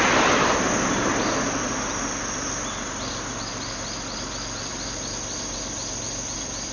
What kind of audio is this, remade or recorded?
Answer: recorded